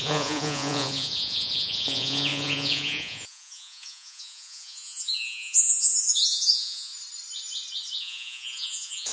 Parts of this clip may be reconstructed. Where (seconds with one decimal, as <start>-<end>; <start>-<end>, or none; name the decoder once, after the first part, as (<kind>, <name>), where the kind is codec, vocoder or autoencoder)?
0.0-6.9 (vocoder, Vocos); 8.0-9.1